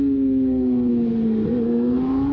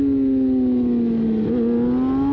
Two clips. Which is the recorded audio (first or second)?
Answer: second